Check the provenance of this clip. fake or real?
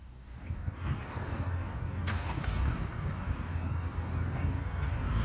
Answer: fake